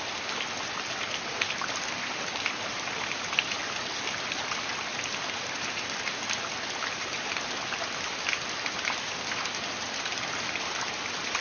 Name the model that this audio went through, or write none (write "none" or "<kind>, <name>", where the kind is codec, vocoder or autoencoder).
none